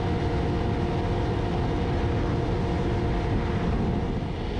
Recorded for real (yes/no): yes